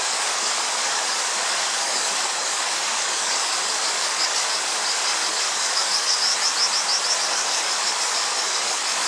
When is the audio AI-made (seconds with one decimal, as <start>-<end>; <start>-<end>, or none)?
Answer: 0.0-6.3; 7.2-9.1